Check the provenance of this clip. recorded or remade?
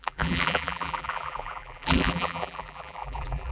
remade